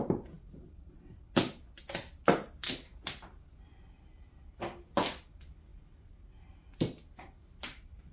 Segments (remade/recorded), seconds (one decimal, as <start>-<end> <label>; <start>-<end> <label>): 0.0-8.1 recorded